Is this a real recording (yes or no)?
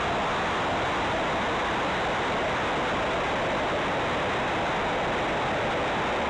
yes